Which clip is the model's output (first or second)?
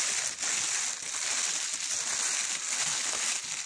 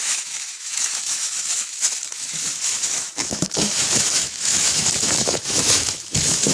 second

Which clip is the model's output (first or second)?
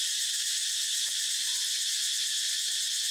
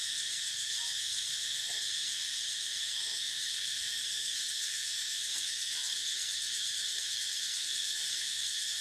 second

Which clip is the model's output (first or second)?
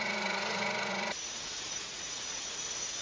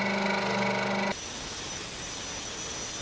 first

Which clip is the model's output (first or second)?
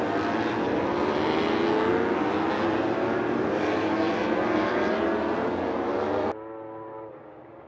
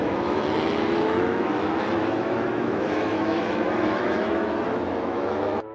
second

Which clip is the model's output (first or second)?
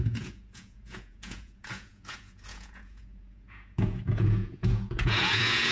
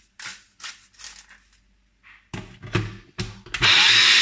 first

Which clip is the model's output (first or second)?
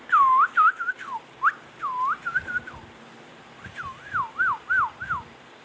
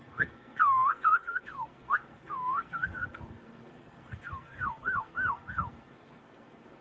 second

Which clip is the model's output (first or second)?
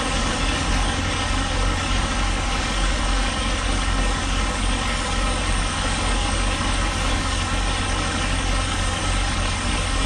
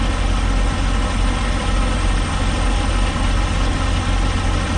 first